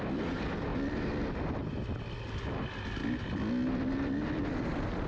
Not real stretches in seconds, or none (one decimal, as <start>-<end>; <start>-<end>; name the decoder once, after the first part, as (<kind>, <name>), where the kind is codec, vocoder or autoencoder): none